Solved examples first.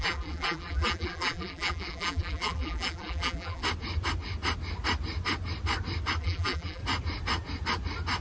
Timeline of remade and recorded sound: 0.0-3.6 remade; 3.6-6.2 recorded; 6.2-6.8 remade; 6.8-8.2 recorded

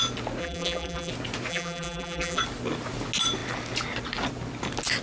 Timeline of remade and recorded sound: 0.0-0.4 recorded; 0.4-1.1 remade; 1.1-1.5 recorded; 1.5-2.4 remade; 2.4-5.0 recorded

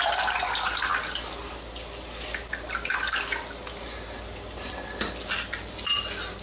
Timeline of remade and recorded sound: 0.0-6.4 recorded

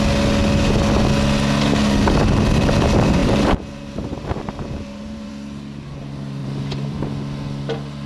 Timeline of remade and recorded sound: 0.0-3.2 recorded; 3.2-5.3 remade; 5.3-6.4 recorded; 6.4-7.0 remade; 7.0-8.1 recorded

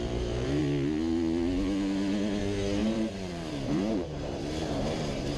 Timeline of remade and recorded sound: 0.0-0.6 remade; 0.6-2.4 recorded; 2.4-5.4 remade